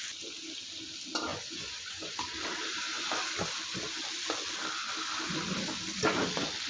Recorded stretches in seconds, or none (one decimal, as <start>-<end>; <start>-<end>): 0.0-1.3; 2.2-6.7